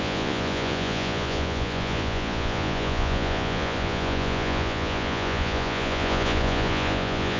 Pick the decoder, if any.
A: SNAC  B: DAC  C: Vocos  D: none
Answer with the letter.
C